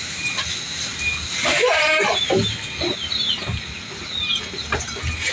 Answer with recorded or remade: recorded